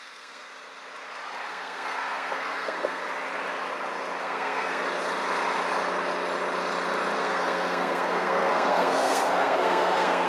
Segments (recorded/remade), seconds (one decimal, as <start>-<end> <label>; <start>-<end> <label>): 0.0-0.5 remade; 0.5-1.5 recorded; 1.5-3.0 remade; 3.0-4.2 recorded; 4.2-4.8 remade; 4.8-7.2 recorded; 7.2-10.3 remade